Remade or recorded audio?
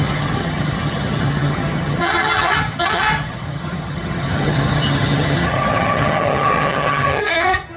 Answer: remade